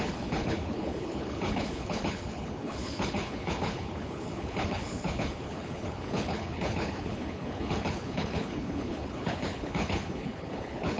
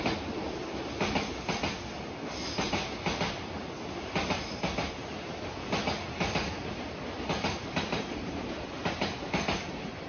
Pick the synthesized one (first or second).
first